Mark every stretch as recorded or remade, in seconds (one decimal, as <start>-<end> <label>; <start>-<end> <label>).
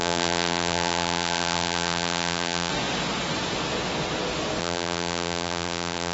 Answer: 0.0-2.7 remade; 2.7-4.6 recorded; 4.6-6.1 remade